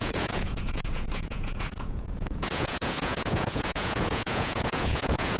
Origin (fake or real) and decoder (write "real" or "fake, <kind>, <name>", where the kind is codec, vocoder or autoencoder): fake, vocoder, Vocos